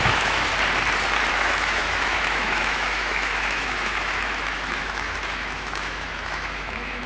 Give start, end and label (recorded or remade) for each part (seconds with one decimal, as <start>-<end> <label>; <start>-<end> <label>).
0.0-0.5 remade; 0.5-1.3 recorded; 1.3-7.1 remade